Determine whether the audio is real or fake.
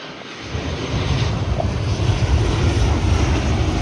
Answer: real